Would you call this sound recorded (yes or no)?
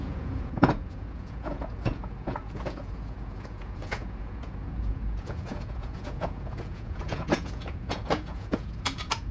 no